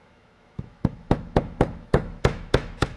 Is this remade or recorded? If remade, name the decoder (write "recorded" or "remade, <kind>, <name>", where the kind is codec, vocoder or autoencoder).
remade, autoencoder, DAC-VAE